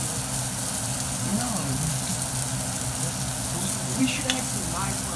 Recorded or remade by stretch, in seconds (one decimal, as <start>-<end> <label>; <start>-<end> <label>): 0.0-5.2 recorded